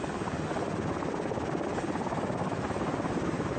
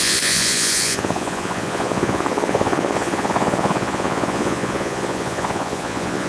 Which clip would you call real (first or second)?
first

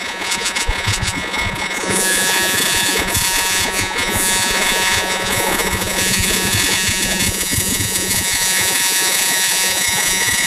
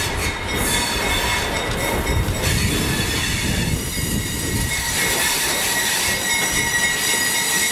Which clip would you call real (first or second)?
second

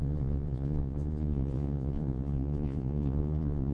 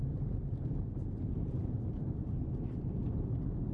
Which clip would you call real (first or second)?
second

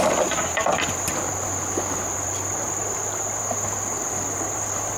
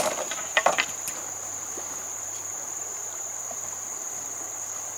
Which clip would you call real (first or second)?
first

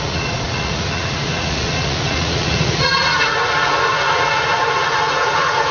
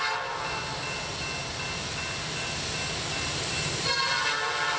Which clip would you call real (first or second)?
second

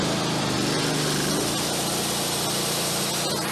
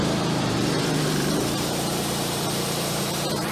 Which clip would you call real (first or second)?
first